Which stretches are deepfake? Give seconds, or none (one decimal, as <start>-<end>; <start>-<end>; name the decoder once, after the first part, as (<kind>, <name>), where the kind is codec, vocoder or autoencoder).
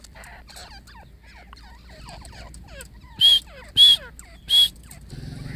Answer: none